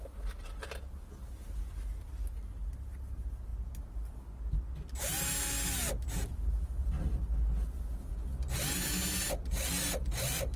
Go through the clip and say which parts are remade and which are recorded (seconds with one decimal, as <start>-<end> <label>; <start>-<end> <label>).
0.0-10.6 recorded